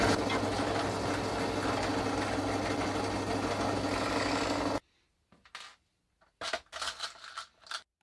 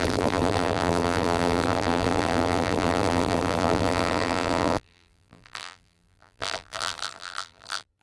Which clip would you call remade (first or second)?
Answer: second